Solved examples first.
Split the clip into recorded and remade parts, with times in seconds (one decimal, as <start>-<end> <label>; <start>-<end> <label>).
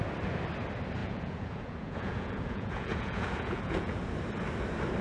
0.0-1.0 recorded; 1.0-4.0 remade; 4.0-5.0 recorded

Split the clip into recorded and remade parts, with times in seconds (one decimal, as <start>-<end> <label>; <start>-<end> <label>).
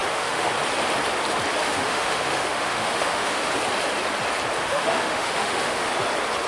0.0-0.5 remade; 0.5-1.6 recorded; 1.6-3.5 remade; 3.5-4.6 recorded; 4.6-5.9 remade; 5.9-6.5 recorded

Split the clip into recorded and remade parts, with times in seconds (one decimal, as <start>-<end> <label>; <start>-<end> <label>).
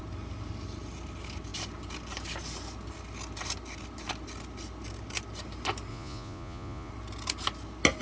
0.0-5.9 recorded; 5.9-6.9 remade; 6.9-8.0 recorded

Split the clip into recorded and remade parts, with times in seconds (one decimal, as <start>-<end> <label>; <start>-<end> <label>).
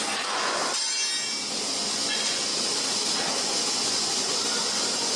0.0-0.9 remade; 0.9-1.5 recorded; 1.5-2.5 remade; 2.5-3.4 recorded; 3.4-5.2 remade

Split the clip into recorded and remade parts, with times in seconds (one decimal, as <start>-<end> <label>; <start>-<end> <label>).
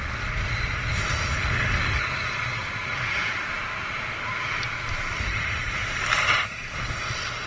0.0-2.6 recorded; 2.6-6.7 remade; 6.7-7.5 recorded